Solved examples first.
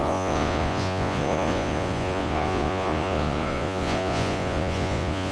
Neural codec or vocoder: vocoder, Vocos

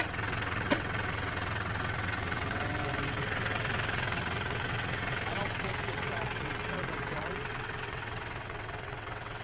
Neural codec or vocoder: vocoder, WaveNeXt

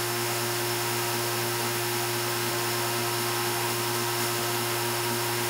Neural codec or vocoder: autoencoder, DAC-VAE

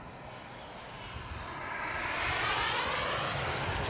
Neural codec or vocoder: none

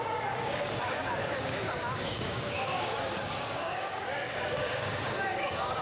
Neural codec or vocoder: codec, DAC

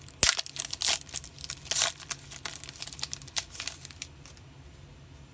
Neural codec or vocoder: none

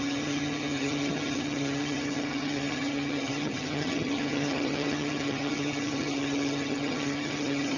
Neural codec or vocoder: vocoder, HiFi-GAN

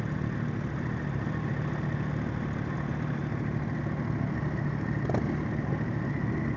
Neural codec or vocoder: none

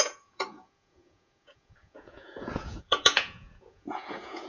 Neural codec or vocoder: vocoder, Vocos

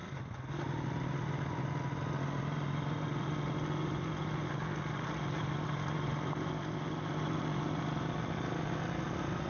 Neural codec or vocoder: none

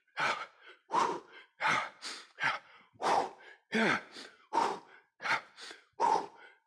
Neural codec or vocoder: none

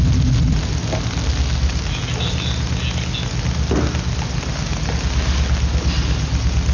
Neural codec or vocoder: none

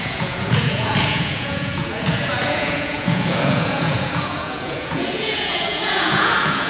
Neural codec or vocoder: vocoder, Vocos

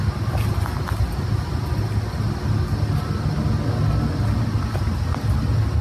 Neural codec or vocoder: none